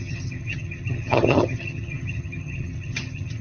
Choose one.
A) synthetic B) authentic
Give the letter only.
A